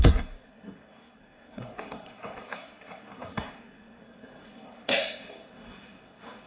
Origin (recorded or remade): remade